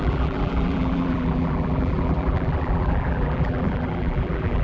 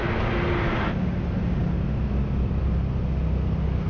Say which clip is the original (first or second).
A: second